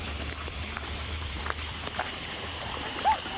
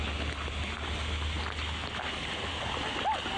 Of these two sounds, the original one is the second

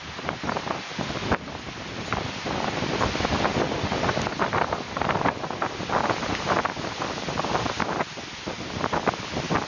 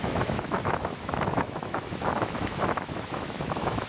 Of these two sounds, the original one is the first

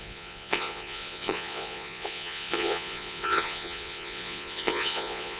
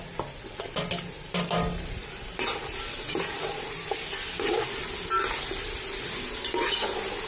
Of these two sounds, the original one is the second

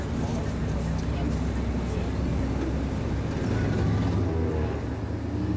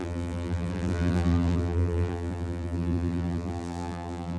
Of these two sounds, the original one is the first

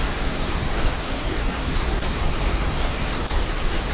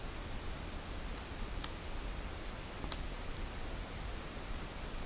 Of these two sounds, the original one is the second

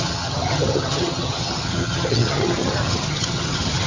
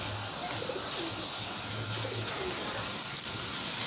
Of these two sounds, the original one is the second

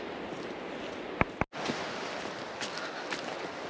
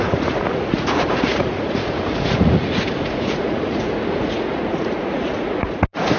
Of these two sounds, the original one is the first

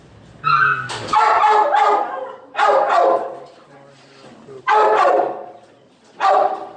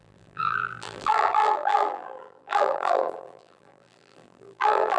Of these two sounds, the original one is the first